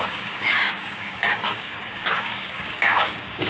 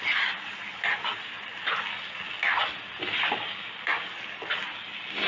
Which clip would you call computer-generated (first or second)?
first